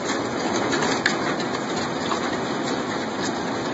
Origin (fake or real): fake